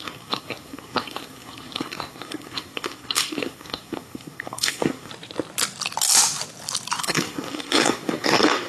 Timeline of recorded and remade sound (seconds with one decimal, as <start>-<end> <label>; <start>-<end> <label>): 0.0-5.1 remade; 5.1-7.0 recorded; 7.0-8.7 remade